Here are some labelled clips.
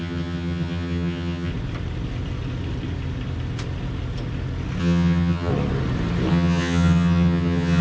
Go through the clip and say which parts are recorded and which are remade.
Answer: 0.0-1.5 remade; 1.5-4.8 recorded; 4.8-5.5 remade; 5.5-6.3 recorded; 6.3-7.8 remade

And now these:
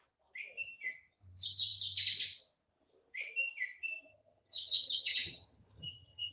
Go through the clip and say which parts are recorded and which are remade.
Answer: 0.0-4.1 recorded; 4.1-6.3 remade

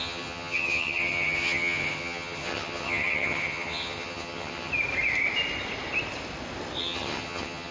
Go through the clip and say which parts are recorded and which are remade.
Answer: 0.0-4.7 remade; 4.7-6.8 recorded; 6.8-7.7 remade

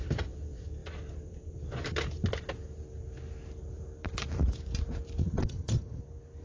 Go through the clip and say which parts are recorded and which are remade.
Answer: 0.0-5.2 recorded; 5.2-6.0 remade; 6.0-6.4 recorded

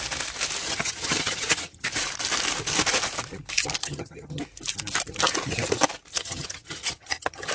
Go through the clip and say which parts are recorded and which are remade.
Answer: 0.0-0.6 recorded; 0.6-1.8 remade; 1.8-3.8 recorded; 3.8-4.4 remade; 4.4-6.1 recorded; 6.1-7.5 remade

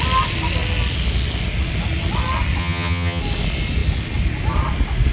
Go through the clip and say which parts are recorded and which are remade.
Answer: 0.0-2.6 recorded; 2.6-3.2 remade; 3.2-5.1 recorded

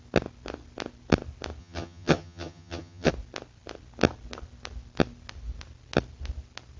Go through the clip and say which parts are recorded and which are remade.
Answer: 0.0-1.6 recorded; 1.6-3.1 remade; 3.1-6.8 recorded